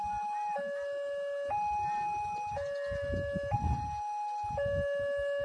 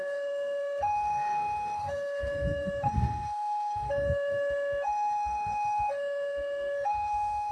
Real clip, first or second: first